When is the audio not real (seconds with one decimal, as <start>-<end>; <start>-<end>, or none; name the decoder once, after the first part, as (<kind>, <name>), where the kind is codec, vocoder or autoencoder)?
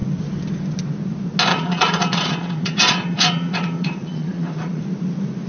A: 1.5-4.8 (vocoder, Vocos)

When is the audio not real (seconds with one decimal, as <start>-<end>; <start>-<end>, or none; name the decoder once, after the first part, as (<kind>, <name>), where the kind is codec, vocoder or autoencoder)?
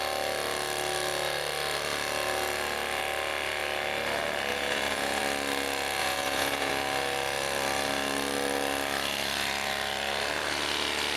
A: 4.5-5.2 (vocoder, Vocos); 6.0-6.7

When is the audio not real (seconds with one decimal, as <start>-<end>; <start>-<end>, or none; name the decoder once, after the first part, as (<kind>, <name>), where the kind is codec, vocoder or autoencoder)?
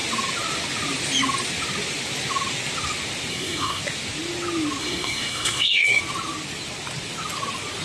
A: 3.3-3.8 (codec, SNAC); 4.8-6.0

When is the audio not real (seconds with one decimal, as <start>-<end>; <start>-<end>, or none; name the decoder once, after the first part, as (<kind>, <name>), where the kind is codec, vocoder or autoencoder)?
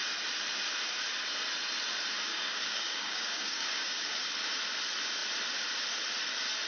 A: 2.3-4.3 (codec, DAC)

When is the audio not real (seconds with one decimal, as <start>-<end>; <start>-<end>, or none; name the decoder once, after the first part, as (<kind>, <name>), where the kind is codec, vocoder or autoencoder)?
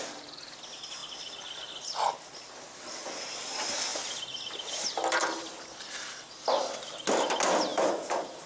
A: 1.0-2.1 (vocoder, BigVGAN v2); 3.9-6.3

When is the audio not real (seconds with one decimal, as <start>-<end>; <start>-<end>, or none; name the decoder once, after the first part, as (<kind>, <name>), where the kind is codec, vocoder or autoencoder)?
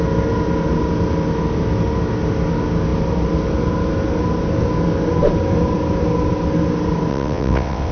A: 7.1-7.9 (vocoder, WaveNeXt)